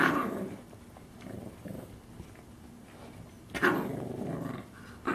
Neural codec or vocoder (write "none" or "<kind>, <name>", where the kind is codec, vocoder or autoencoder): none